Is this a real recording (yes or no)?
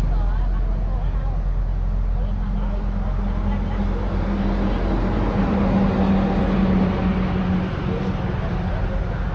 yes